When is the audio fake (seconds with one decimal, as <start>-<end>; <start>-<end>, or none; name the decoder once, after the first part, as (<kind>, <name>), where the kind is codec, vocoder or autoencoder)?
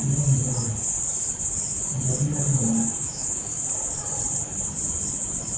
3.0-3.5 (autoencoder, DAC-VAE)